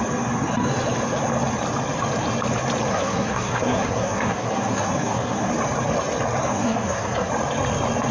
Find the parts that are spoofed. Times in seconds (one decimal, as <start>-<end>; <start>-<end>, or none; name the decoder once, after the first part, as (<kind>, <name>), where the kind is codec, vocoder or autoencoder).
2.9-5.5 (codec, SNAC); 6.4-7.3